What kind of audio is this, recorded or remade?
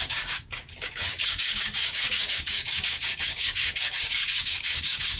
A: remade